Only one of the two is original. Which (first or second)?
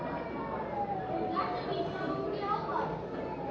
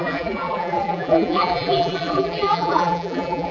first